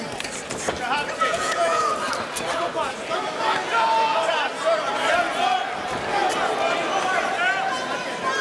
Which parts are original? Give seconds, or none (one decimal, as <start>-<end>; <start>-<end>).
0.0-1.2; 1.8-8.4